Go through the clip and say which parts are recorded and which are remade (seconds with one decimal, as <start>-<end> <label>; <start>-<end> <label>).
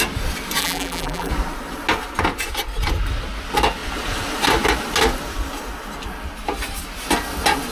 0.0-0.6 recorded; 0.6-1.3 remade; 1.3-7.7 recorded